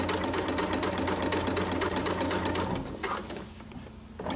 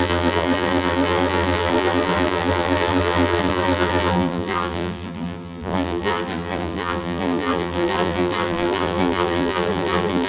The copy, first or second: second